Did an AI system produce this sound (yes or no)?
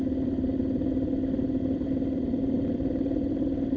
no